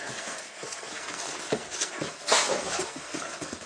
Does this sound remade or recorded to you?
remade